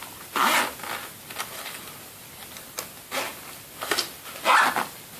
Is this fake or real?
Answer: real